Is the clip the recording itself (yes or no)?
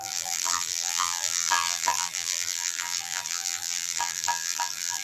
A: no